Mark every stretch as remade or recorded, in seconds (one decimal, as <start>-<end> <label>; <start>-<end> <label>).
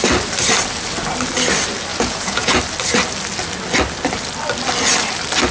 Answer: 0.0-1.9 recorded; 1.9-2.6 remade; 2.6-5.5 recorded